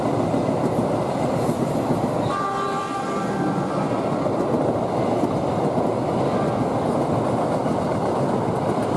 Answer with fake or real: real